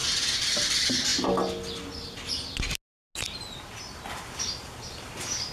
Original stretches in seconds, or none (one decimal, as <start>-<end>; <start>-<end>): 0.0-5.5